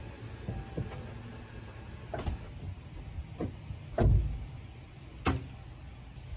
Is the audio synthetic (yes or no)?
no